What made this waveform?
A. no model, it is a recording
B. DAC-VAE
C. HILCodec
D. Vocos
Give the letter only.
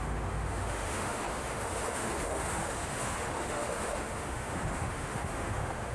B